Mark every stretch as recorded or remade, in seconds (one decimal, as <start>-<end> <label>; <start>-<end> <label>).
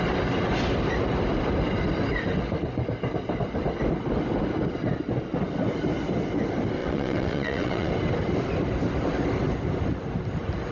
0.0-6.8 recorded; 6.8-7.9 remade; 7.9-10.7 recorded